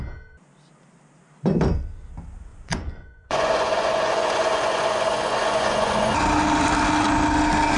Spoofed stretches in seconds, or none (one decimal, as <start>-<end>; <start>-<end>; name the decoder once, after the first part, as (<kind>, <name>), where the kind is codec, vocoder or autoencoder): 2.5-6.1 (vocoder, Vocos)

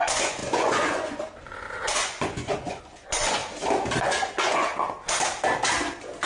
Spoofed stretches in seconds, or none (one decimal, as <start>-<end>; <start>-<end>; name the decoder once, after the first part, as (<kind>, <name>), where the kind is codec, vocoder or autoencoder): 0.0-3.4 (vocoder, Vocos); 4.0-4.7

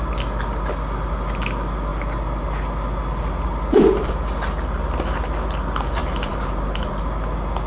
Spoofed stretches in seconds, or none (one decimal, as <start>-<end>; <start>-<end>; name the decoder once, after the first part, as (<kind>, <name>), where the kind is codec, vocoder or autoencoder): 6.0-7.0 (vocoder, BigVGAN v2)